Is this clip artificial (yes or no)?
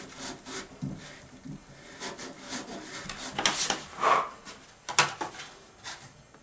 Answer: no